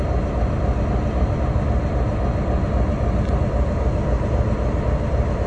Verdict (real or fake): real